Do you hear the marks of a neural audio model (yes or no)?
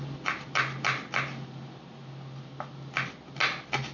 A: no